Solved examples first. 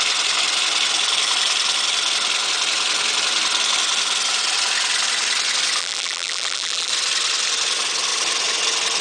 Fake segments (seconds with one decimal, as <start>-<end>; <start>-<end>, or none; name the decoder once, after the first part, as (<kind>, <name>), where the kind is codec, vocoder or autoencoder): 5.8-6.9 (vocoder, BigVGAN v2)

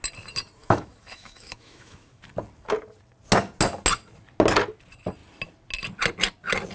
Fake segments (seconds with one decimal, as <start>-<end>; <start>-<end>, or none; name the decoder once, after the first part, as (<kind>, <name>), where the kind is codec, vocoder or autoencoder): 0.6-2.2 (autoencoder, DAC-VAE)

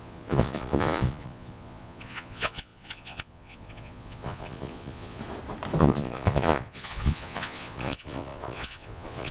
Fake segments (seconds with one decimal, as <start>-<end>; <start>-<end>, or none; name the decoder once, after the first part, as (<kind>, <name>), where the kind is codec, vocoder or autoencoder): 0.0-5.2 (vocoder, Vocos); 5.8-9.3